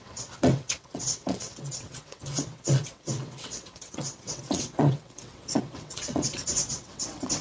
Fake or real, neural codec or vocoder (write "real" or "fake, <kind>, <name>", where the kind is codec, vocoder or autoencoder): fake, vocoder, WaveNeXt